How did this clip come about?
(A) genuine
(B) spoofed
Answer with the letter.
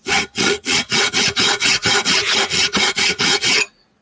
B